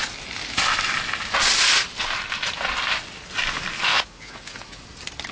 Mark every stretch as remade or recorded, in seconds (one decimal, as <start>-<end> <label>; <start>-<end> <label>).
0.0-3.9 recorded; 3.9-4.8 remade; 4.8-5.3 recorded